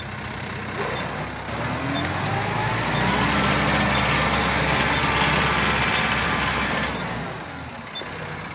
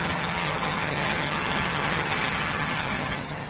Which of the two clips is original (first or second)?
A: first